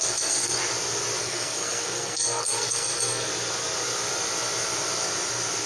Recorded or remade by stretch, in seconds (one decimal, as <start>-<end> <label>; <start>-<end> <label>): 0.0-0.6 remade; 0.6-1.2 recorded; 1.2-3.3 remade; 3.3-5.7 recorded